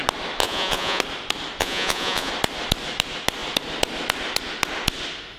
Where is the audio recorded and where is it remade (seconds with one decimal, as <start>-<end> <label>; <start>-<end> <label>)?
0.0-0.4 recorded; 0.4-1.0 remade; 1.0-1.6 recorded; 1.6-2.3 remade; 2.3-5.4 recorded